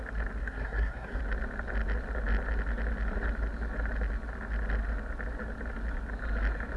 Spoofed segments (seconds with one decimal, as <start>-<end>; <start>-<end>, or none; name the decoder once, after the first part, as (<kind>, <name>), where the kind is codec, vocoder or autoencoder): 0.4-1.2 (codec, SNAC)